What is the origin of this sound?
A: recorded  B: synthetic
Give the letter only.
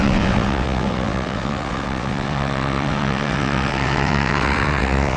B